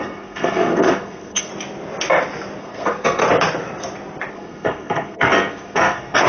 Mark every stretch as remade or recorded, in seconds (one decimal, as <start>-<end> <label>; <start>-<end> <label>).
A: 0.0-1.5 remade; 1.5-2.6 recorded; 2.6-3.2 remade; 3.2-4.3 recorded; 4.3-6.3 remade